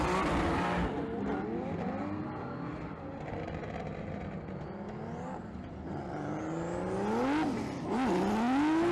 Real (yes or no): yes